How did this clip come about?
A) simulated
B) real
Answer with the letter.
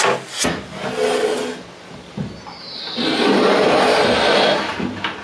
B